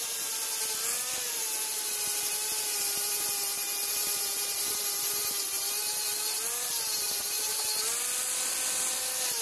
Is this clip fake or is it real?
real